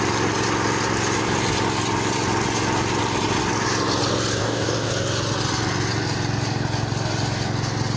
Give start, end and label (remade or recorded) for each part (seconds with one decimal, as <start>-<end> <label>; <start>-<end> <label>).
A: 0.0-4.4 recorded; 4.4-4.9 remade; 4.9-8.0 recorded